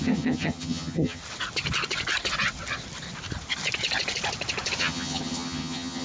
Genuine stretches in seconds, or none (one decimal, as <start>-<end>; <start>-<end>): 1.2-4.8